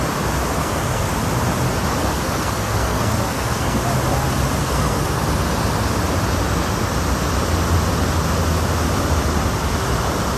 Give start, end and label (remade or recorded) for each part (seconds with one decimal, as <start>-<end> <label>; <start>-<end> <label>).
0.0-0.6 recorded; 0.6-1.1 remade; 1.1-2.0 recorded; 2.0-3.8 remade; 3.8-4.6 recorded; 4.6-5.2 remade; 5.2-10.4 recorded